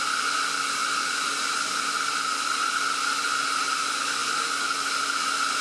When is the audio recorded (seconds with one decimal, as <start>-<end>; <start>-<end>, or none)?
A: 0.0-5.6